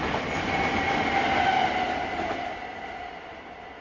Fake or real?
real